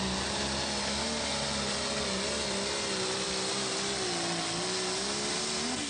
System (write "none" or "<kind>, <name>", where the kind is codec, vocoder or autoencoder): none